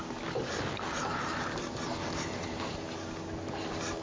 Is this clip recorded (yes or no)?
yes